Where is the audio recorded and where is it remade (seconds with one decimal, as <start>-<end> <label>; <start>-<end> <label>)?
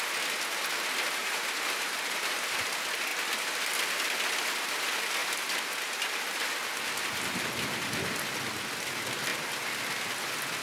0.0-1.2 recorded; 1.2-2.7 remade; 2.7-5.2 recorded; 5.2-6.6 remade; 6.6-10.6 recorded